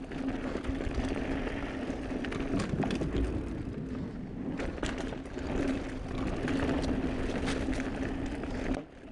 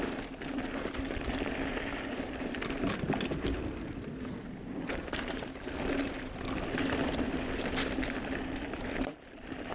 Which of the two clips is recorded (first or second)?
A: first